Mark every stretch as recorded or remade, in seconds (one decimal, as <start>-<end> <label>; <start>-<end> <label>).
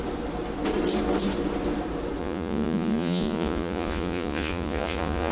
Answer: 0.0-2.2 recorded; 2.2-5.3 remade